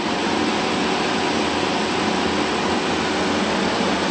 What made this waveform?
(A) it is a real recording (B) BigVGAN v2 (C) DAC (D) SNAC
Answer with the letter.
A